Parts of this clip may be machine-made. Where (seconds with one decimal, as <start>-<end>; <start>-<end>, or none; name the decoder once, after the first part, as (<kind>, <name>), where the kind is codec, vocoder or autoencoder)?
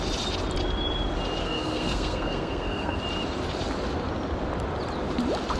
1.4-3.0 (codec, SNAC)